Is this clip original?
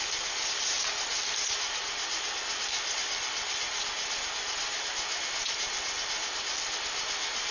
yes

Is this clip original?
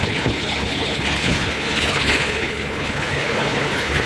no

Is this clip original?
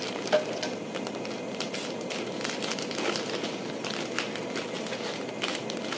yes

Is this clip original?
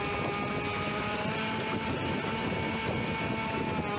yes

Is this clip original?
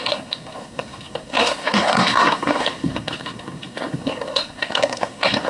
no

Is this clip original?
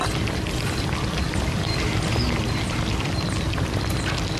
yes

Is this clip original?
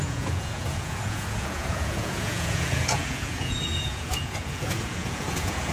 no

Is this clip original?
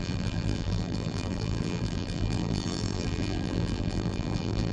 no